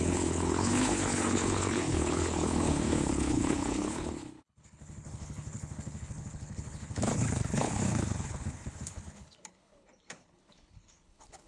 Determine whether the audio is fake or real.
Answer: fake